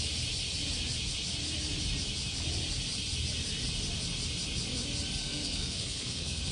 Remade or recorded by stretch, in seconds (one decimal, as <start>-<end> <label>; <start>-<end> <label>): 0.0-5.2 recorded; 5.2-6.5 remade